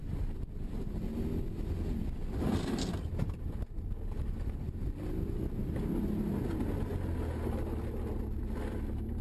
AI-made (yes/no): no